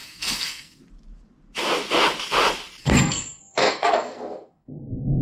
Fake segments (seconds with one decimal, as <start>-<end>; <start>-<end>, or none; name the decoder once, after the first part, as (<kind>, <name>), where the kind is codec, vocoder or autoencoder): 0.0-0.8 (codec, SNAC); 2.8-5.2